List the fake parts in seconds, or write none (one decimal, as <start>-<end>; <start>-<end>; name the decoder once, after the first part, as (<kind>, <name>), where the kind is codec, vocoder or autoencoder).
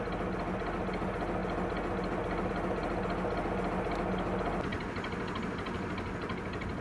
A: none